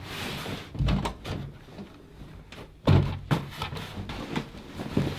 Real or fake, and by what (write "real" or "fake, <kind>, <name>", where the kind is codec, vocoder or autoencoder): real